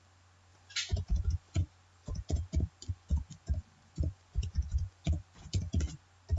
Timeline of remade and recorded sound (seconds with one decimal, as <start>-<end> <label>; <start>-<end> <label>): 0.0-0.5 recorded; 0.5-1.6 remade; 1.6-2.0 recorded; 2.0-5.8 remade; 5.8-6.4 recorded